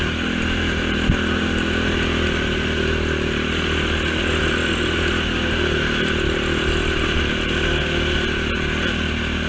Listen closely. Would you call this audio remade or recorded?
recorded